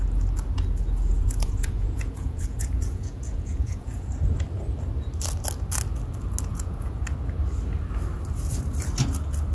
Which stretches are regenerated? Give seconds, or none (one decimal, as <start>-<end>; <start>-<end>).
1.1-4.1; 6.5-7.0